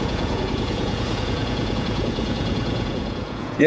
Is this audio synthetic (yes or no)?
yes